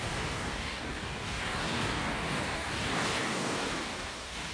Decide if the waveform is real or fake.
fake